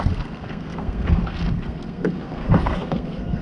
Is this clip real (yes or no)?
no